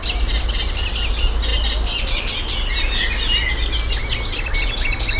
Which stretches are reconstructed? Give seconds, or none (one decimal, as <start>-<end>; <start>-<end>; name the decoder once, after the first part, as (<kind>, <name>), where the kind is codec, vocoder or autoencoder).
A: none